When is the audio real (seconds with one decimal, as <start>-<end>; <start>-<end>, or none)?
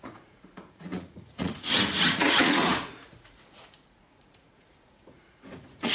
none